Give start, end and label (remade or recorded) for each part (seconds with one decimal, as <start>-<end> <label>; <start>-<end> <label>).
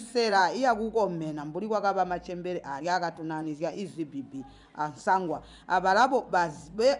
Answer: 0.0-0.4 remade; 0.4-2.8 recorded; 2.8-3.9 remade; 3.9-6.2 recorded; 6.2-7.0 remade